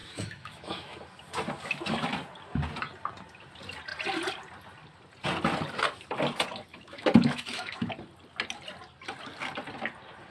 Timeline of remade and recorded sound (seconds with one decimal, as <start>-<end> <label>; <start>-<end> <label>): 0.0-1.0 remade; 1.0-6.7 recorded; 6.7-7.9 remade; 7.9-10.3 recorded